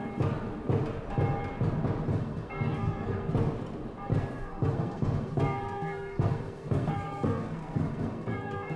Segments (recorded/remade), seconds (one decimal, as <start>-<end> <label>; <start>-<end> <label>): 0.0-2.1 recorded; 2.1-3.3 remade; 3.3-4.1 recorded; 4.1-8.8 remade